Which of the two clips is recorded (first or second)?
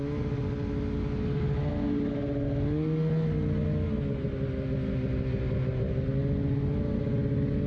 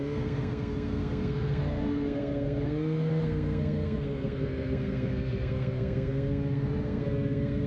first